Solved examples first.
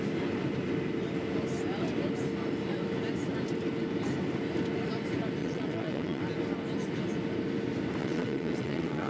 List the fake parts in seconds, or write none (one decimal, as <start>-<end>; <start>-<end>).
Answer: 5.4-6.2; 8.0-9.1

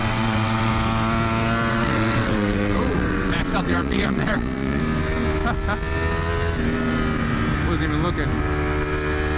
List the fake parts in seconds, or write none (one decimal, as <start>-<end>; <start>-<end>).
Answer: 0.0-0.7; 1.7-4.8

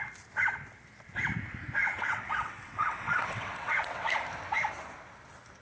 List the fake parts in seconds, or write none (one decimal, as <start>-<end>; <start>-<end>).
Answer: 1.8-4.1

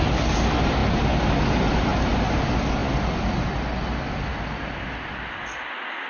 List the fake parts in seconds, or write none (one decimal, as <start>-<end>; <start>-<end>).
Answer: none

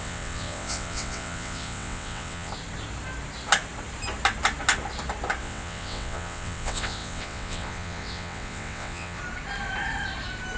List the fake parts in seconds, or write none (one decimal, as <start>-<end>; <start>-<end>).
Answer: 0.0-2.5; 5.4-9.2

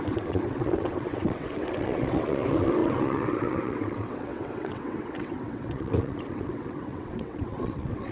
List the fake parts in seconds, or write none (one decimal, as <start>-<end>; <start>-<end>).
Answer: 0.0-8.1